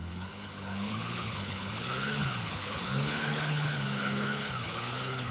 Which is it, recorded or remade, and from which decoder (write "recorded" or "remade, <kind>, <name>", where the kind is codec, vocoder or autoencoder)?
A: remade, codec, HILCodec